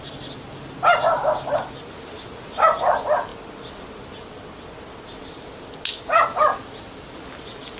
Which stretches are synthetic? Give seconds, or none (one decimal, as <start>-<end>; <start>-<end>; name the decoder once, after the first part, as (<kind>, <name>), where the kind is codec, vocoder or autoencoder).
none